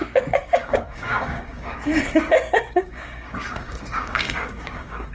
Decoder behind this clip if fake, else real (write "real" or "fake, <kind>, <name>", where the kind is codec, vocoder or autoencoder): fake, codec, DAC